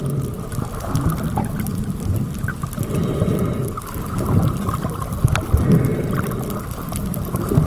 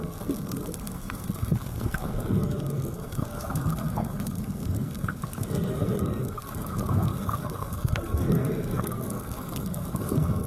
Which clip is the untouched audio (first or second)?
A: first